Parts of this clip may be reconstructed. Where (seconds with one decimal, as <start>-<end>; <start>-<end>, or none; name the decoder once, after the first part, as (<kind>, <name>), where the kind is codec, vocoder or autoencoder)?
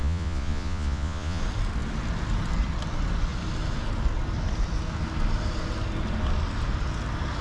0.0-1.4 (vocoder, Vocos)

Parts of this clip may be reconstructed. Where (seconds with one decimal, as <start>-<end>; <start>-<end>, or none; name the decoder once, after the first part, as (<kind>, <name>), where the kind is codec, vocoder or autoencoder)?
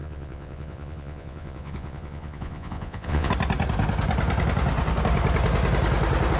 0.0-3.3 (vocoder, Vocos)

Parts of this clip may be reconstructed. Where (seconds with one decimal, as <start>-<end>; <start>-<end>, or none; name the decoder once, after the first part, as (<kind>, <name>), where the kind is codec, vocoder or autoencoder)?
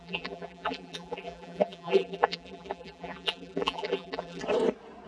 0.0-4.4 (vocoder, BigVGAN v2)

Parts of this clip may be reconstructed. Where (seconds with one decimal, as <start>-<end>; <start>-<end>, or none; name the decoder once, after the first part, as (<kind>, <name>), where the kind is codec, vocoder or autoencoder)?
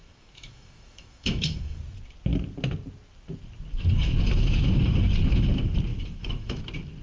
0.0-1.8 (autoencoder, DAC-VAE); 5.9-6.6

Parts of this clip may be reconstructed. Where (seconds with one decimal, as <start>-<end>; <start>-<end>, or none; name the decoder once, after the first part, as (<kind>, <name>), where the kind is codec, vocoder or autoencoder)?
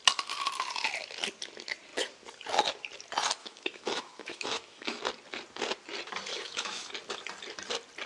3.4-5.0 (autoencoder, DAC-VAE); 6.3-6.9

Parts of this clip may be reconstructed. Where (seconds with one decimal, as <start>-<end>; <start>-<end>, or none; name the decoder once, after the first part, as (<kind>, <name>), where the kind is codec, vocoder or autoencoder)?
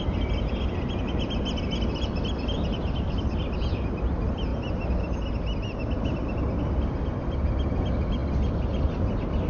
none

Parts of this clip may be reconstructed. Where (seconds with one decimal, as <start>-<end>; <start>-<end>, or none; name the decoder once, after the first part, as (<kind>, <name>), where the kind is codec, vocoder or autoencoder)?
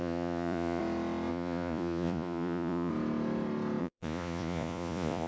0.0-0.8 (vocoder, Vocos); 1.3-2.9; 3.8-5.3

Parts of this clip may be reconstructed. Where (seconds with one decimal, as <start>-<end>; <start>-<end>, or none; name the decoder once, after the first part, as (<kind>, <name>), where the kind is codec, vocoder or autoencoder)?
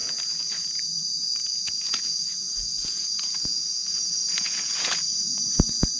0.0-6.0 (vocoder, Vocos)